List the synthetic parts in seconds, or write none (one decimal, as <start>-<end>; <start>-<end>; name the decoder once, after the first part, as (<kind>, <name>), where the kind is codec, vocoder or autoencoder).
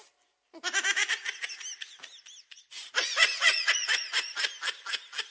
2.8-4.3 (vocoder, Vocos)